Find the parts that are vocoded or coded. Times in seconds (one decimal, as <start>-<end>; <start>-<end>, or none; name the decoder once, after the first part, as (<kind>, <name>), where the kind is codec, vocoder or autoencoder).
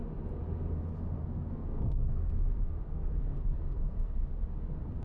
1.2-4.2 (codec, SNAC)